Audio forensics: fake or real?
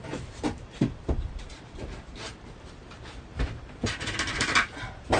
fake